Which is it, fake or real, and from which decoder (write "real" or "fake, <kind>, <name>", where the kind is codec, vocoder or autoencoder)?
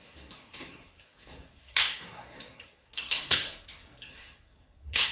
fake, codec, SNAC